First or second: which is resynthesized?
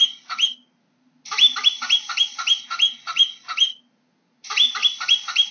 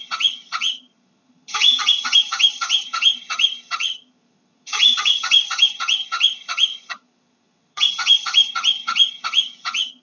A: second